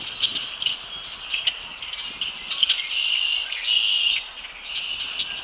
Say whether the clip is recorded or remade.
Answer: recorded